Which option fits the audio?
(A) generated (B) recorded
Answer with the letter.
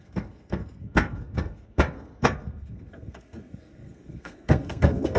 A